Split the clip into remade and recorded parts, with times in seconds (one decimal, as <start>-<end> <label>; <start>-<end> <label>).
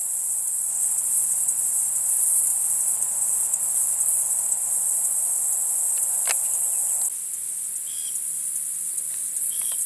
0.0-0.7 recorded; 0.7-4.7 remade; 4.7-9.4 recorded; 9.4-9.9 remade